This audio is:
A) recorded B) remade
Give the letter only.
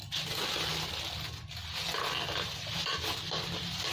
A